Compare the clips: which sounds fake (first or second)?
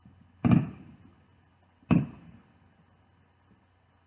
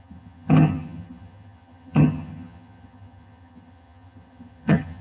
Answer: second